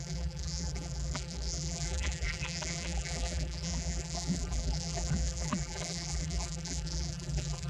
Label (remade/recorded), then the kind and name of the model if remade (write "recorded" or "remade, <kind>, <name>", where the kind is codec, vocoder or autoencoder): remade, vocoder, BigVGAN v2